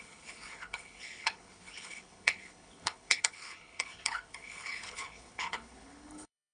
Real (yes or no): no